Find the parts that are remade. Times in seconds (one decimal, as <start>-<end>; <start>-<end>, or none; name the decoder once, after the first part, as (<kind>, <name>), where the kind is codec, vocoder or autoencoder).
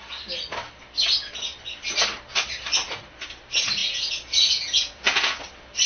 3.8-5.4 (vocoder, Vocos)